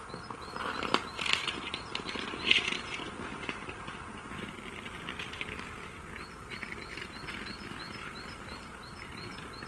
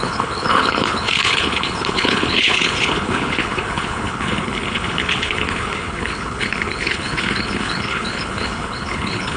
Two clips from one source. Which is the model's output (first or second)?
second